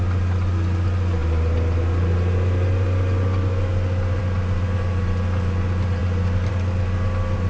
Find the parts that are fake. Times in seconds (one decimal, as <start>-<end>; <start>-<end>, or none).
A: none